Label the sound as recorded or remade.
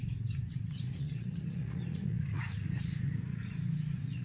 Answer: remade